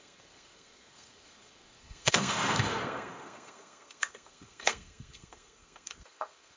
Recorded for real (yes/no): no